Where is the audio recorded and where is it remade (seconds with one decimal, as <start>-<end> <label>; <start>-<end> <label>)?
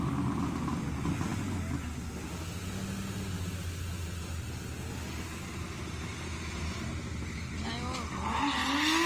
0.0-9.1 recorded